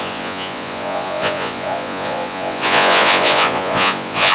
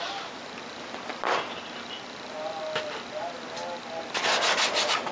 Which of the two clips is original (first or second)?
second